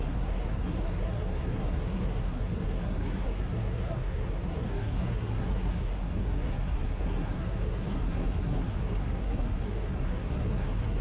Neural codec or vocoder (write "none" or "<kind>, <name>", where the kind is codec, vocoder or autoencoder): codec, SNAC